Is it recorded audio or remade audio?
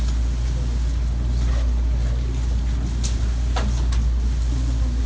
recorded